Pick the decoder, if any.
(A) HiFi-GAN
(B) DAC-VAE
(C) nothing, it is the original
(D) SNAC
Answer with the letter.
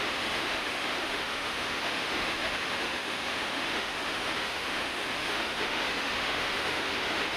B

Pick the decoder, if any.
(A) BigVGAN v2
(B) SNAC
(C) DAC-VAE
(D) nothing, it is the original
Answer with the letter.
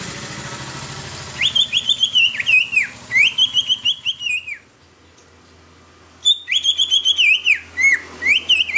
D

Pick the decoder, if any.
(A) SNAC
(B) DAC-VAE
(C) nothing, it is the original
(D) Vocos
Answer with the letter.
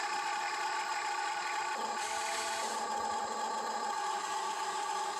C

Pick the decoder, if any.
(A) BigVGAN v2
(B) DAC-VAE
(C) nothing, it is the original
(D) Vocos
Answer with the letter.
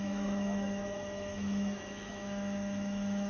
B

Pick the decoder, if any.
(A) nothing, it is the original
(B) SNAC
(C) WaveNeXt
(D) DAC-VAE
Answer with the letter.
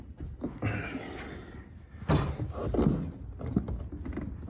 A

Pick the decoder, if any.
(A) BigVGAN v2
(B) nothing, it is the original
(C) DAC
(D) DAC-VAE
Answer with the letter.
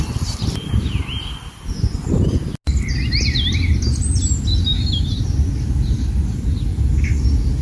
B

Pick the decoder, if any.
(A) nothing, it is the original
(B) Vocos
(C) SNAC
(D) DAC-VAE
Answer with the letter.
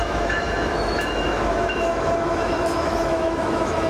D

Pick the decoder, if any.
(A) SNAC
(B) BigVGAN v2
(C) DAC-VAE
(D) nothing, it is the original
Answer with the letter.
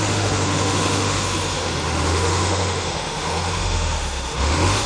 C